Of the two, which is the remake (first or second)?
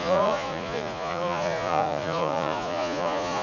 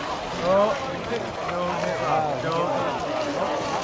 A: first